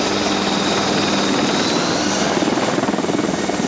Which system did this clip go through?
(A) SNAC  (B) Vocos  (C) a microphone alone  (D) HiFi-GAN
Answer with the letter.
C